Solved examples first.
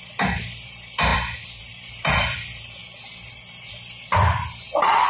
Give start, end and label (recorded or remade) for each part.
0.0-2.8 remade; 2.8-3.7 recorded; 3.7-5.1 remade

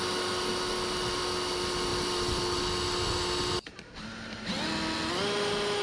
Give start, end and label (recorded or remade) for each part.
0.0-5.8 recorded

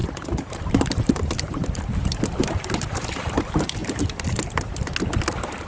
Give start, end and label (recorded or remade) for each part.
0.0-3.4 remade; 3.4-3.8 recorded; 3.8-4.9 remade; 4.9-5.7 recorded

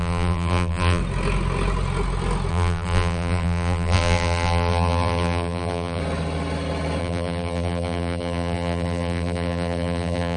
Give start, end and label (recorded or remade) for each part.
0.0-1.0 remade; 1.0-2.5 recorded; 2.5-6.0 remade; 6.0-7.0 recorded; 7.0-10.4 remade

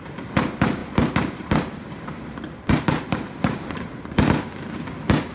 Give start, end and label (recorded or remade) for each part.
0.0-0.8 recorded; 0.8-4.0 remade; 4.0-5.3 recorded